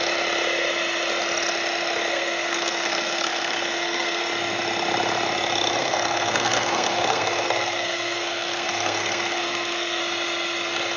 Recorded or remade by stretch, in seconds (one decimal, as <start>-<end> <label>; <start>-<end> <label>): 0.0-2.1 recorded; 2.1-4.2 remade; 4.2-5.8 recorded; 5.8-10.0 remade; 10.0-11.0 recorded